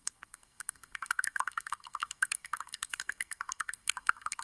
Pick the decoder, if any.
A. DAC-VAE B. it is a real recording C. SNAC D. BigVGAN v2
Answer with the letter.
C